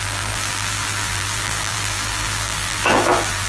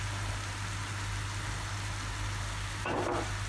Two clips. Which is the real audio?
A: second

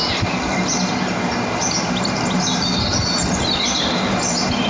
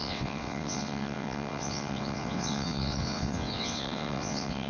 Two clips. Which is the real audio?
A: first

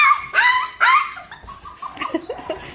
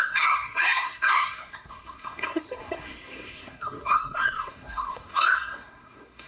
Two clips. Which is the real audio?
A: first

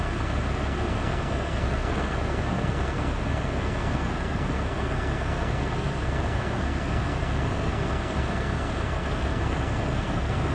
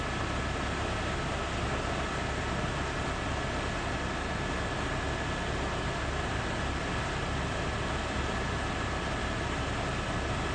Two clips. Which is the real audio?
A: second